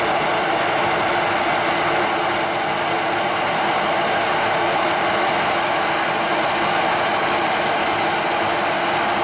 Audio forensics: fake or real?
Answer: real